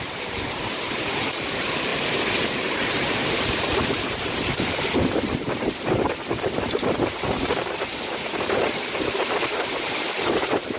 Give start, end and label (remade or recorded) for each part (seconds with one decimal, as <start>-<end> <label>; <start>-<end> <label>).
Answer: 0.0-10.8 remade